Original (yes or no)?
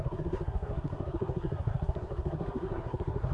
no